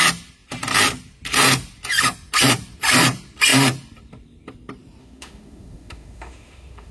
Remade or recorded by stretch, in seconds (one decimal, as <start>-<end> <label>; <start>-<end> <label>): 0.0-5.0 recorded; 5.0-6.9 remade